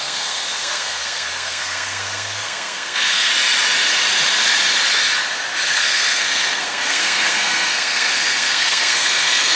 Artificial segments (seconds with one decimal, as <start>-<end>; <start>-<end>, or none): 0.0-3.3; 5.7-9.6